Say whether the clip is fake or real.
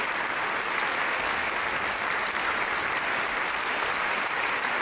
real